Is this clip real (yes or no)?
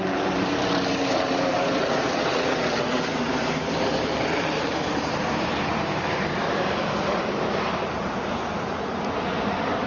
no